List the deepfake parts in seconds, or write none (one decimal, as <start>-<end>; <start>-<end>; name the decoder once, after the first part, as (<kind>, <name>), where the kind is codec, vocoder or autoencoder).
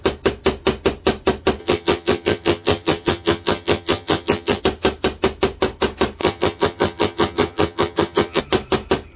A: 1.6-4.6 (vocoder, HiFi-GAN); 6.2-8.4